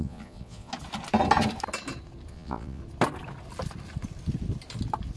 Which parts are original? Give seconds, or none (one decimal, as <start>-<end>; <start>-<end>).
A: 0.7-2.3; 2.8-5.2